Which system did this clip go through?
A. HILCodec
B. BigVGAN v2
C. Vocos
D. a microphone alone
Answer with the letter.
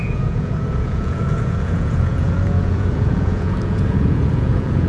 C